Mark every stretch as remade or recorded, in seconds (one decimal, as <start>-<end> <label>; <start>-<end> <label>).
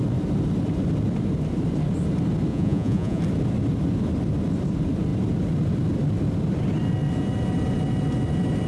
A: 0.0-2.5 recorded; 2.5-3.2 remade; 3.2-8.7 recorded